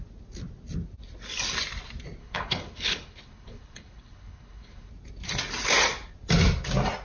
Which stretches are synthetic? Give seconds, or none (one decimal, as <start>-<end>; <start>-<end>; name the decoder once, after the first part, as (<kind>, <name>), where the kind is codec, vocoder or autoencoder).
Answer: 2.2-4.9 (codec, HILCodec)